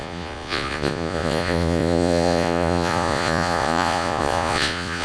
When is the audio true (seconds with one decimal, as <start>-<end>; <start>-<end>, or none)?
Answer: none